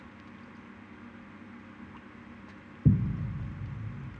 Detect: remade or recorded recorded